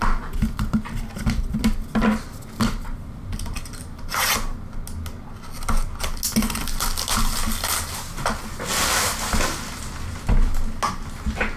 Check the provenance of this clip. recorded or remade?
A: recorded